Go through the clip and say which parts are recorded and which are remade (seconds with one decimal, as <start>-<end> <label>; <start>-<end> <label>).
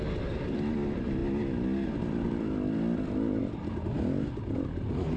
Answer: 0.0-5.2 recorded